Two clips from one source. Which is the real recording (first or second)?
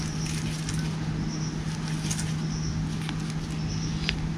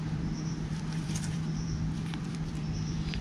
first